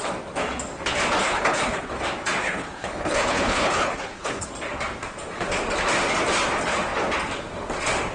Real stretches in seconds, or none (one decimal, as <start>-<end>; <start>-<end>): 0.0-1.2; 1.9-2.4; 4.5-8.1